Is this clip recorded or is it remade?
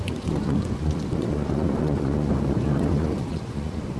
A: remade